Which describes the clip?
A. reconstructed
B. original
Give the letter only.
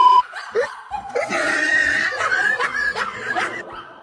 A